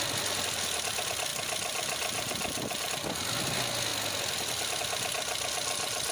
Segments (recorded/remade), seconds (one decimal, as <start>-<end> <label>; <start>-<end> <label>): 0.0-6.1 recorded